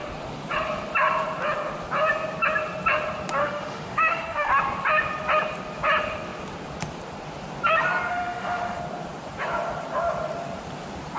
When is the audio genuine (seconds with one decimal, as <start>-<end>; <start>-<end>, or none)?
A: 0.0-3.4; 4.5-8.1; 8.8-11.2